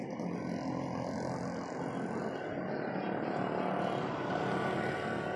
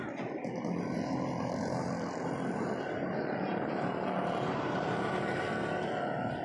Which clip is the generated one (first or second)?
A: second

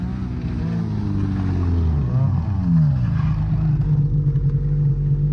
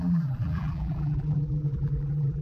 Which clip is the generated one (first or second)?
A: second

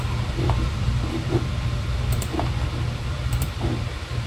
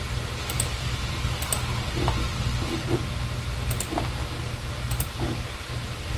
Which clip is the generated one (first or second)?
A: first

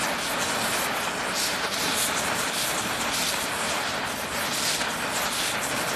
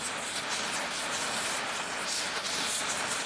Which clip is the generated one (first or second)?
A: first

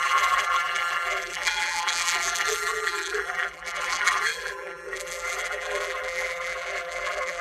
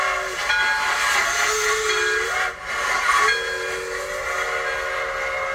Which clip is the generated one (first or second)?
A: first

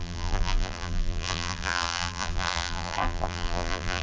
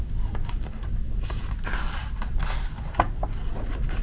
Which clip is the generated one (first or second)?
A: first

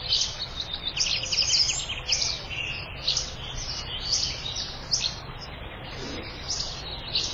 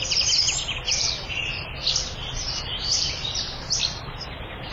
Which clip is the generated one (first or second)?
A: second